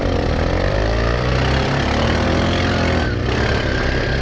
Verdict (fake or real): real